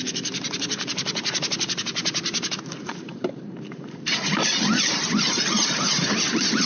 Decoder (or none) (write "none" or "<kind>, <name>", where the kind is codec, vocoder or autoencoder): vocoder, BigVGAN v2